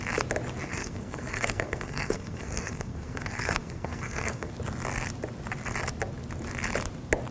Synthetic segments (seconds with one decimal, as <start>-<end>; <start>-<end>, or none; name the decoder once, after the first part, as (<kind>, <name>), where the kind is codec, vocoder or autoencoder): 0.7-4.5 (codec, SNAC)